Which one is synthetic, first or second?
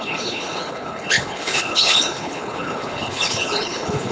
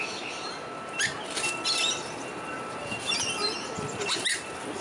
first